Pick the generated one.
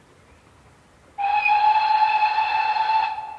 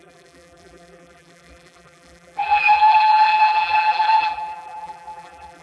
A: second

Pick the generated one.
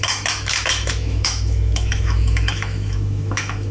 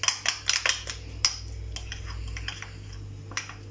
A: first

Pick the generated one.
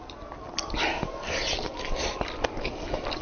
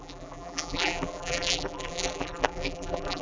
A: second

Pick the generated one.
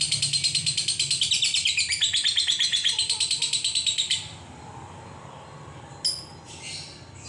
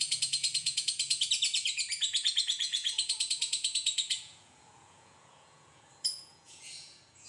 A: second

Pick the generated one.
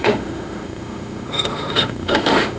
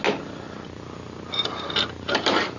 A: first